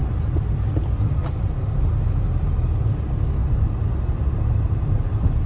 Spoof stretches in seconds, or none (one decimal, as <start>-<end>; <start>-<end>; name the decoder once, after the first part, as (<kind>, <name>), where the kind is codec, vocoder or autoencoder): none